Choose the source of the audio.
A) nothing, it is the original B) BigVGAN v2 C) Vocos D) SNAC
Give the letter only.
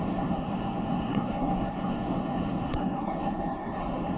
D